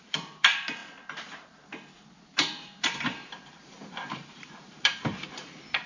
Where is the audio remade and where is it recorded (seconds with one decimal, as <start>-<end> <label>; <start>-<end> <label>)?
0.0-0.8 remade; 0.8-2.2 recorded; 2.2-5.9 remade